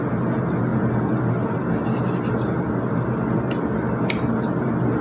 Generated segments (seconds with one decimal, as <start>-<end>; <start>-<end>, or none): none